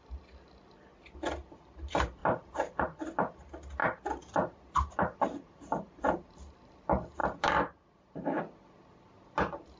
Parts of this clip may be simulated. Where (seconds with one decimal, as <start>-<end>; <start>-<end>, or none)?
2.2-2.8; 3.8-6.1